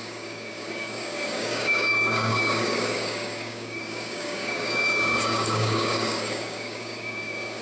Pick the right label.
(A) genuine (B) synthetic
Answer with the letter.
B